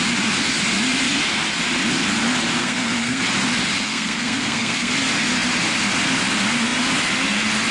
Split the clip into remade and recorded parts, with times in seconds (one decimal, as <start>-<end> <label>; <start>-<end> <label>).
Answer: 0.0-2.6 recorded; 2.6-3.2 remade; 3.2-3.9 recorded; 3.9-4.9 remade; 4.9-7.7 recorded